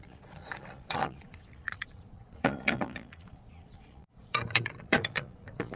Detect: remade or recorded remade